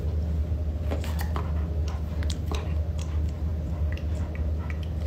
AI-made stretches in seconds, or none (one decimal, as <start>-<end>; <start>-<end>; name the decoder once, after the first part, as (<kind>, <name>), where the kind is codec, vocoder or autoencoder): none